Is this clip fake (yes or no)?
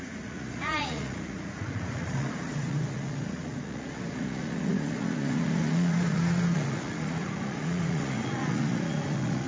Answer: yes